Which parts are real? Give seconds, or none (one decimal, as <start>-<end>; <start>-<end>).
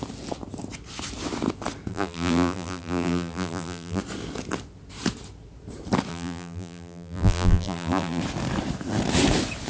0.0-1.9; 4.0-6.1; 8.2-9.7